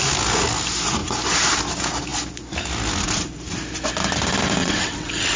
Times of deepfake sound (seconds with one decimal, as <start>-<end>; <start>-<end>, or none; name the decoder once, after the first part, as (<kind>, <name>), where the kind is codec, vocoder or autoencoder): 4.6-5.4 (vocoder, WaveNeXt)